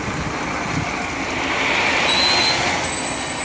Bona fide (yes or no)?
yes